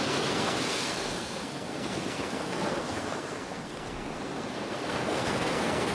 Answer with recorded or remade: remade